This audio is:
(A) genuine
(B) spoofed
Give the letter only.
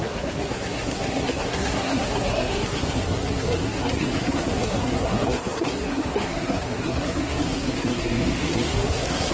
B